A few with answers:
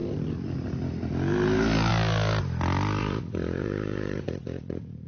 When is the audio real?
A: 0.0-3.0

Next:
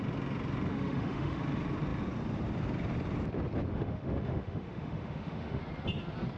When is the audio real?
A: 0.0-0.7; 1.4-3.7; 5.6-6.4

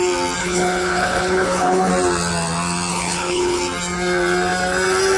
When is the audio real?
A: 0.0-0.4; 1.9-2.9; 3.6-5.2

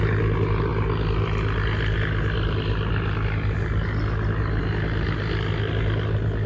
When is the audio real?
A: 0.0-6.5

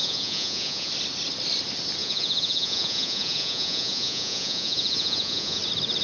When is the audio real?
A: 0.9-2.0; 5.6-6.0

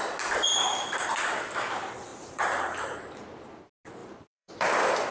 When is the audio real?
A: 0.0-0.5; 1.2-2.1; 3.0-4.0

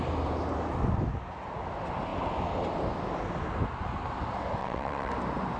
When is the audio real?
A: 0.0-4.6; 5.1-5.6